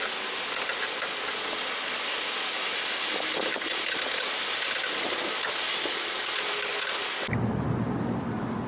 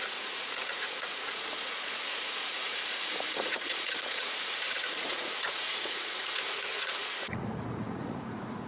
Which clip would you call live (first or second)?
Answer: first